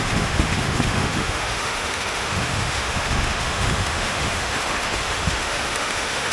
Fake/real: fake